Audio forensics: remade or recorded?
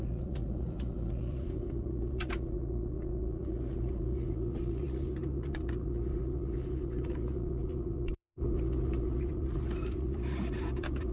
remade